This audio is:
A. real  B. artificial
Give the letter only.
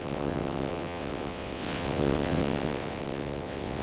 B